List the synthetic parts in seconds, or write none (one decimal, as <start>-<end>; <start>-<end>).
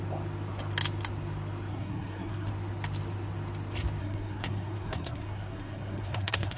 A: 1.7-2.5; 4.0-6.6